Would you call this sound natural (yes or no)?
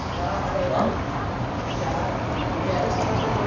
yes